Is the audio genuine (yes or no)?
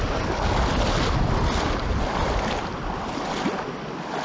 yes